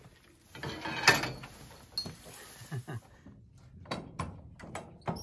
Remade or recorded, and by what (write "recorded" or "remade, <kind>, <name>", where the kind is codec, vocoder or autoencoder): recorded